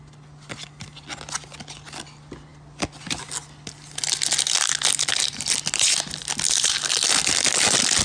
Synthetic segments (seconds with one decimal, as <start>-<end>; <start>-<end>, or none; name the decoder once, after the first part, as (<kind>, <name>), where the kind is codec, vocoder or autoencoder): none